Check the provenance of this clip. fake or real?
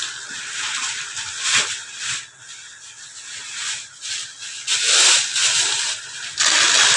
real